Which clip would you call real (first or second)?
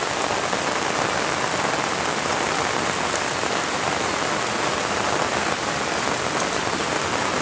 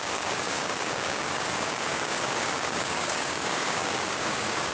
first